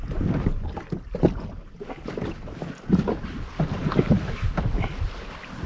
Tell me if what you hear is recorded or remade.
recorded